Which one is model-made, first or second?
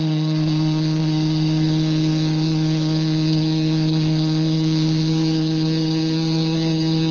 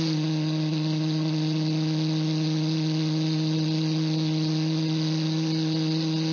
first